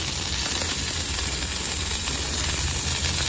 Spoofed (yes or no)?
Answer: no